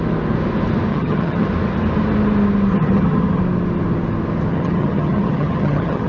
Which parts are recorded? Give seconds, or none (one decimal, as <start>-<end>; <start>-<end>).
0.0-0.9; 1.5-2.7; 3.4-4.5